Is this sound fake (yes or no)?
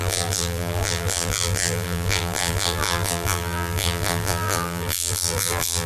yes